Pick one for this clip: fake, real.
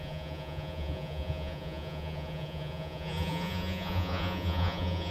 fake